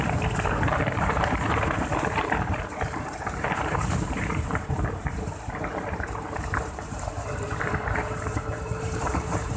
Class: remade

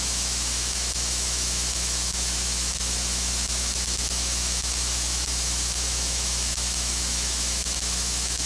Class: remade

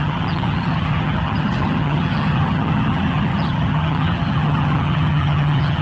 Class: remade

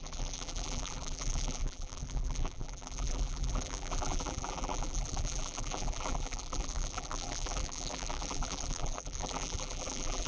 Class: remade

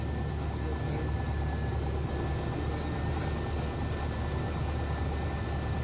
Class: recorded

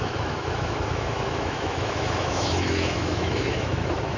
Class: remade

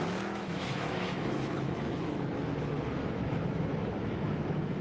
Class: remade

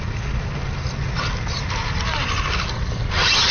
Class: recorded